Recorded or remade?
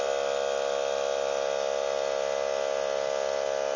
recorded